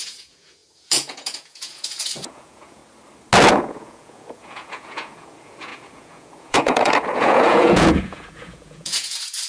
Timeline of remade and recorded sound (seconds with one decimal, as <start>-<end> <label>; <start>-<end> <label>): 0.0-2.8 remade; 2.8-3.5 recorded; 3.5-9.5 remade